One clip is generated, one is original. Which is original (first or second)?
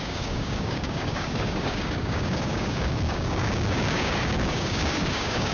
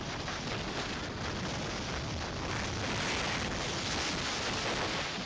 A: second